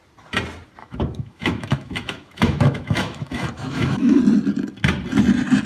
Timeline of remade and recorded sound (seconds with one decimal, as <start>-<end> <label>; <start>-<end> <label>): 0.0-0.8 recorded; 0.8-4.2 remade; 4.2-5.7 recorded